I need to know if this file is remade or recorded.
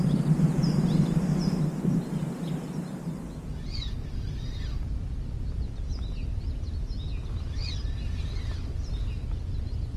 recorded